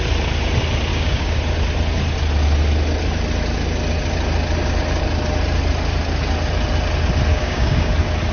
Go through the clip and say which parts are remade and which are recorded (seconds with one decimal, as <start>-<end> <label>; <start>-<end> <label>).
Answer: 0.0-0.9 recorded; 0.9-1.4 remade; 1.4-7.3 recorded; 7.3-7.9 remade; 7.9-8.3 recorded